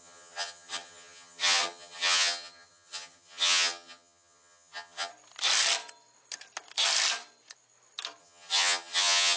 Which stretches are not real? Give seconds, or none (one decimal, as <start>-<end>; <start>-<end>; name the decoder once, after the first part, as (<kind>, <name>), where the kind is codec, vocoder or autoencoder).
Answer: 0.0-5.1 (vocoder, HiFi-GAN); 8.2-9.4